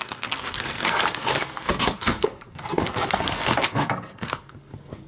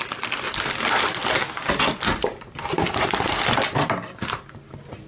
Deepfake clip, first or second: first